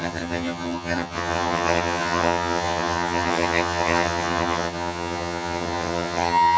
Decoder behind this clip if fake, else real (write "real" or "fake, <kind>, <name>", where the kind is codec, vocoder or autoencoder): fake, vocoder, HiFi-GAN